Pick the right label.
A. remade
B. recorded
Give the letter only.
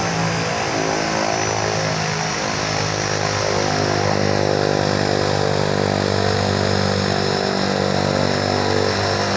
B